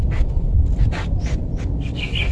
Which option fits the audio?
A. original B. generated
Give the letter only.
A